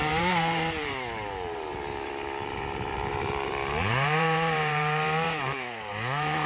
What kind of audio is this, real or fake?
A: fake